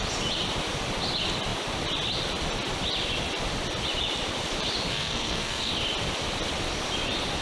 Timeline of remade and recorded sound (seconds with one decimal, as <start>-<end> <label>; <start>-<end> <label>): 0.0-4.9 recorded; 4.9-5.7 remade; 5.7-7.4 recorded